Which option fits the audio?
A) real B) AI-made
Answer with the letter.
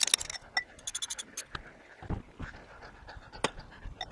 A